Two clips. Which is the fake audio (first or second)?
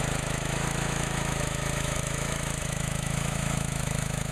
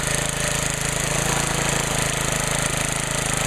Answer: first